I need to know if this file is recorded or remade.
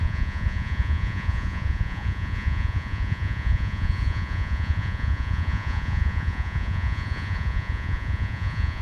remade